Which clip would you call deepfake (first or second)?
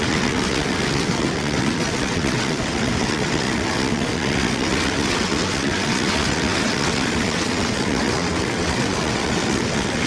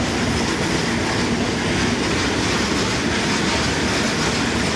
first